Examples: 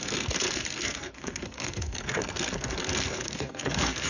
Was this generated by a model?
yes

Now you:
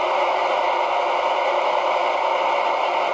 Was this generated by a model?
no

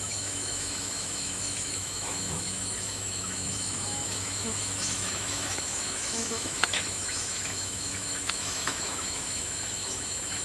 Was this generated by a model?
yes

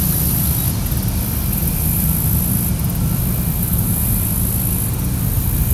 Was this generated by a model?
no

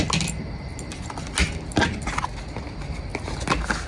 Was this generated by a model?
no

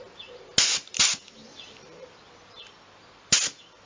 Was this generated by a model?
no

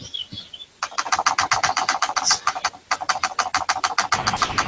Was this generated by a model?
no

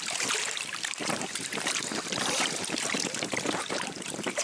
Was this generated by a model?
yes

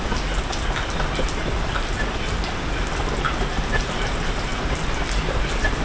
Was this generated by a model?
no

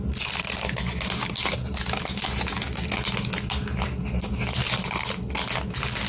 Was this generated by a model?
no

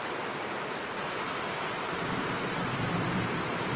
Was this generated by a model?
no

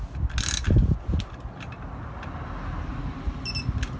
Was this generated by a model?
no